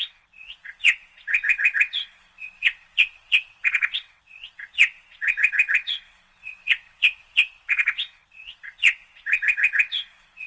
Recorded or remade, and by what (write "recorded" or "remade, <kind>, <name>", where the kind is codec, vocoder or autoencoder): remade, vocoder, WaveNeXt